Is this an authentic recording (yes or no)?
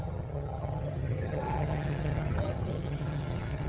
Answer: no